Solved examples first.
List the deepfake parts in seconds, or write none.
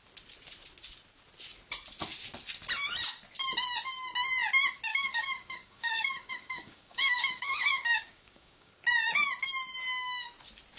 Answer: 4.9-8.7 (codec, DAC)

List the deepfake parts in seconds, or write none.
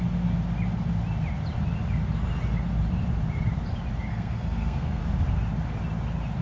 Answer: 4.1-5.0 (codec, SNAC)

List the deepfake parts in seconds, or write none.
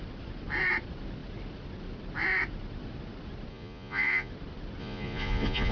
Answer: 3.5-4.3 (vocoder, Vocos); 4.8-5.7